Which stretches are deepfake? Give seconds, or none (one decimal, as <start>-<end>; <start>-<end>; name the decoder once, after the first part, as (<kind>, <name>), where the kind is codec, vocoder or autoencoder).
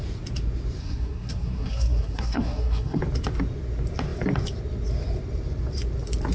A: 0.8-3.0 (codec, SNAC)